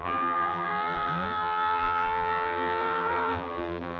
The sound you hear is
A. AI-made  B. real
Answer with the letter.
A